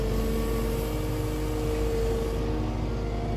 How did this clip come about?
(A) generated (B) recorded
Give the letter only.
B